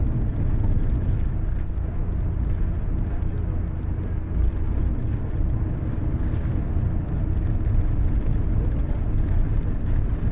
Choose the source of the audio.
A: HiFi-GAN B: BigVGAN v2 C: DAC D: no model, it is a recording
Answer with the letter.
D